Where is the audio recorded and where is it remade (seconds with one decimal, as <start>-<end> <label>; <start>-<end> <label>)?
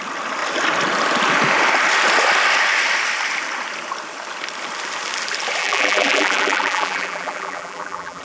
0.0-5.6 recorded; 5.6-8.2 remade